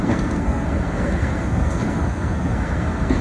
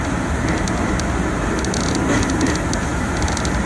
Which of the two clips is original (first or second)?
second